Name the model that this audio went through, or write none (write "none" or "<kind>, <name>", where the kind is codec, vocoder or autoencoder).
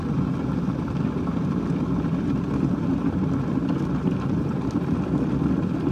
none